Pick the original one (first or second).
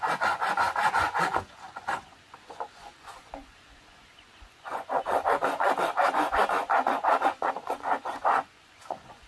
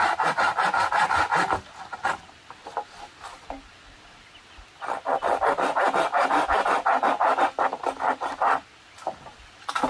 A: second